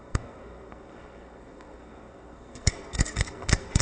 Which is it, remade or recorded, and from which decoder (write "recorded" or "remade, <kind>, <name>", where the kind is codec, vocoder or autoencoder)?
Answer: remade, codec, SNAC